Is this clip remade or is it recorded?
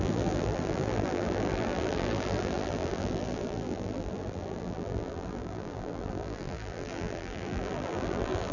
remade